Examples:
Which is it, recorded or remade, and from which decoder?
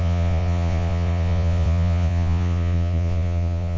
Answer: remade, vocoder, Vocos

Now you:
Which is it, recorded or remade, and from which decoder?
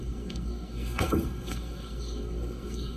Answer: remade, codec, SNAC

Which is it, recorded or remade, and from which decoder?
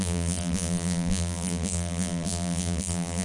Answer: remade, vocoder, BigVGAN v2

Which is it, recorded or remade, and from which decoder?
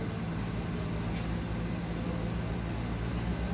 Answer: recorded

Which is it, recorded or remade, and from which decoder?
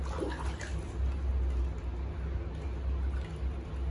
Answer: recorded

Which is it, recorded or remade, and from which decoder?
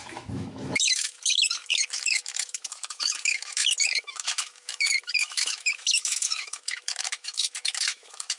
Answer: remade, autoencoder, DAC-VAE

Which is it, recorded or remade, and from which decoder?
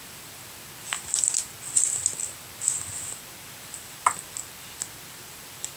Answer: remade, vocoder, BigVGAN v2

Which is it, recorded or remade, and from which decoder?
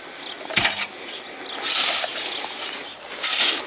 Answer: recorded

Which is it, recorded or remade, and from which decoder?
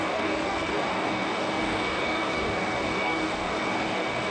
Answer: remade, codec, DAC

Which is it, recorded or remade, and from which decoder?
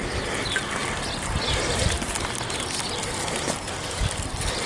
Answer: recorded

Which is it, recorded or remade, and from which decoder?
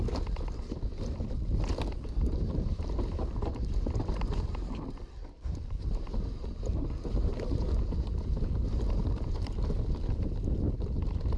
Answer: recorded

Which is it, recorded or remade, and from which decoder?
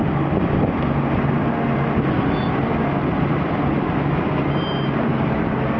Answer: recorded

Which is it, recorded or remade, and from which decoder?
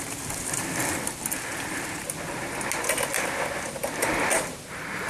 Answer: recorded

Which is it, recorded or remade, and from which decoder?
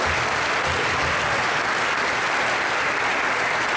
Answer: recorded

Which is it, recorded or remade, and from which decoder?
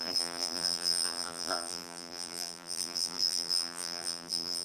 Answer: remade, vocoder, BigVGAN v2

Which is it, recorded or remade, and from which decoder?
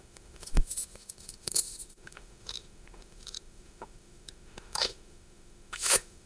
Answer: remade, autoencoder, DAC-VAE